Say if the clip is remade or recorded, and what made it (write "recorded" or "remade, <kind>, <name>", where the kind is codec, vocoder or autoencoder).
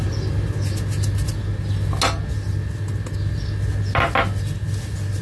recorded